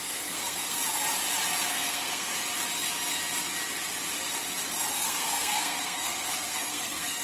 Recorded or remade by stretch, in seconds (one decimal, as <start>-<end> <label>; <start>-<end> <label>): 0.0-0.8 remade; 0.8-1.7 recorded; 1.7-2.3 remade; 2.3-4.9 recorded; 4.9-7.2 remade